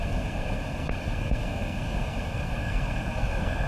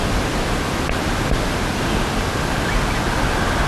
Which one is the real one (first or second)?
second